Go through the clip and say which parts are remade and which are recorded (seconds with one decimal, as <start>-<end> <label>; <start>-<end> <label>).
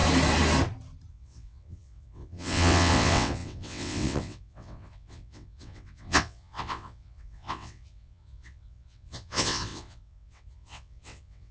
0.0-1.1 recorded; 1.1-11.5 remade